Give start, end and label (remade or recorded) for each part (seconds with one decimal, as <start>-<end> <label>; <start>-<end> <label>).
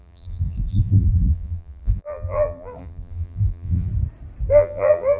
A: 0.0-3.9 remade; 3.9-4.5 recorded; 4.5-5.2 remade